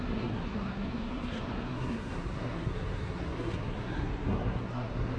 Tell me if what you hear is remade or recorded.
remade